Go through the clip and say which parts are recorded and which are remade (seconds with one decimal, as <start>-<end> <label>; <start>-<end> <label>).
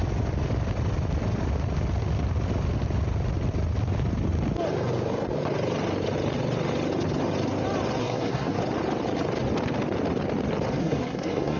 0.0-8.0 recorded; 8.0-8.6 remade; 8.6-10.8 recorded; 10.8-11.6 remade